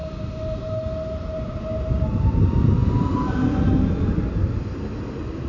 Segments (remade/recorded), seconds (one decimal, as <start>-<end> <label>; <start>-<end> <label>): 0.0-5.5 recorded